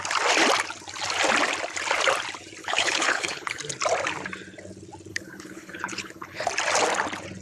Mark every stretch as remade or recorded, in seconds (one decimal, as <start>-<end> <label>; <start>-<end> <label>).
0.0-2.6 recorded; 2.6-3.6 remade; 3.6-5.1 recorded; 5.1-6.5 remade; 6.5-7.4 recorded